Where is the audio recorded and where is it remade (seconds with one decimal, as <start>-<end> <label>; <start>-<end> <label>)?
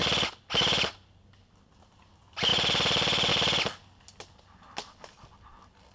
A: 0.0-5.9 recorded